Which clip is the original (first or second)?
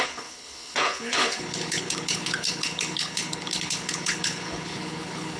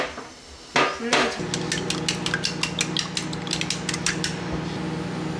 second